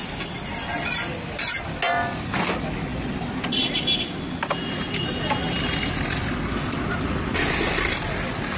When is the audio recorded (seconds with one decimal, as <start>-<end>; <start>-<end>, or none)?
0.0-8.6